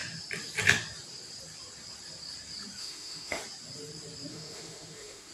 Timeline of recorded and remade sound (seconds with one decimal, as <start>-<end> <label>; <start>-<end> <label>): 0.0-2.8 recorded; 2.8-3.4 remade; 3.4-4.3 recorded; 4.3-5.3 remade